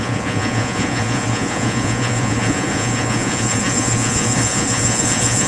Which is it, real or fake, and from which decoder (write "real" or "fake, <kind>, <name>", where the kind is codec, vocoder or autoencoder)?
fake, vocoder, Vocos